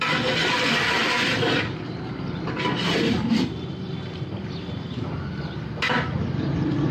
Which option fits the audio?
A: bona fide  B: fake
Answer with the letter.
B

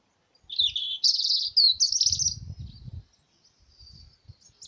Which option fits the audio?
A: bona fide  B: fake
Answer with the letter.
A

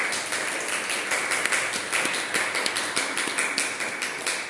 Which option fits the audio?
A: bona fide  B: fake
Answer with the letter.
A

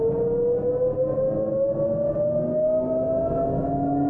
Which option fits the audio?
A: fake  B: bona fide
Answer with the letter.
B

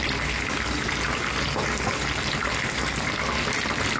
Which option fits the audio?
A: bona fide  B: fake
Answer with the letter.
A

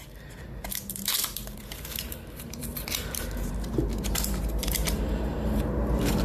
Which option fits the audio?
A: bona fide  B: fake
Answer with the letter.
B